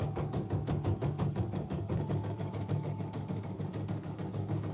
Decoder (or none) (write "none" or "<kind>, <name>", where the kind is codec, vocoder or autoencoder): codec, DAC